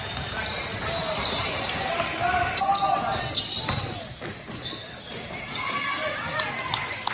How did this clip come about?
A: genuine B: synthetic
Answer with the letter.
A